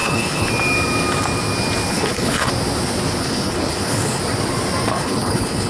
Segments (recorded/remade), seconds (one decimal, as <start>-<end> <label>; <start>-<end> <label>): 0.0-0.5 remade; 0.5-1.9 recorded; 1.9-2.5 remade; 2.5-3.2 recorded; 3.2-4.2 remade; 4.2-4.9 recorded; 4.9-5.7 remade